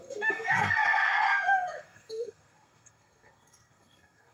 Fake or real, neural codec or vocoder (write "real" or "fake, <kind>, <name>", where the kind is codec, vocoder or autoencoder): fake, codec, SNAC